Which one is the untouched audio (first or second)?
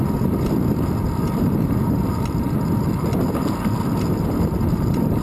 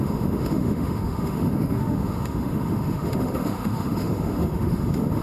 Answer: first